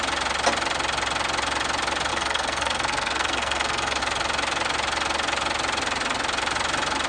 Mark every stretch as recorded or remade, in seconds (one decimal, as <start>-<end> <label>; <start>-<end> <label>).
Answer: 0.0-2.1 recorded; 2.1-4.0 remade; 4.0-7.1 recorded